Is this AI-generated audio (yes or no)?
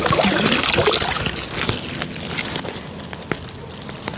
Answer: no